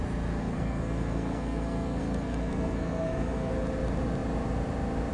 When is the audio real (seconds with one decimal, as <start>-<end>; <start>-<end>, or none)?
0.0-0.4; 3.5-5.1